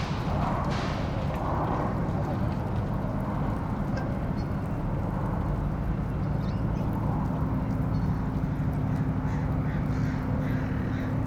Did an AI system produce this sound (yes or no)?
no